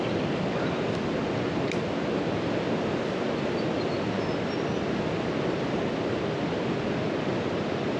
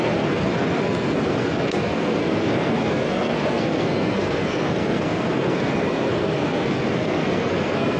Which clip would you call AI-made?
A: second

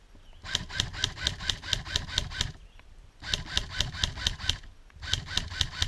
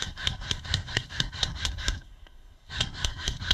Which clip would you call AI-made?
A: second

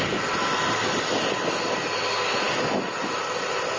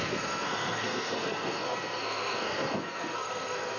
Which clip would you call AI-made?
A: second